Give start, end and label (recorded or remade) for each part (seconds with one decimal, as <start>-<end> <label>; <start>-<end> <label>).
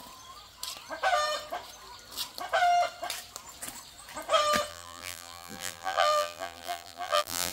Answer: 0.0-4.7 recorded; 4.7-7.5 remade